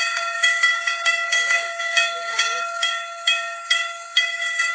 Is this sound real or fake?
fake